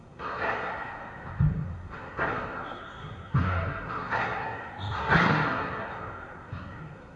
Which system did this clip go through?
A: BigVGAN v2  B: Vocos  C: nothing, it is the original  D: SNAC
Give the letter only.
D